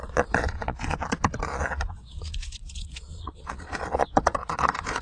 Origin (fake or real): fake